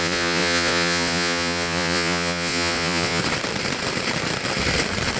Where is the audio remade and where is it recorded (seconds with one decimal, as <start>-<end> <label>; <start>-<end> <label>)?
0.0-3.2 remade; 3.2-5.2 recorded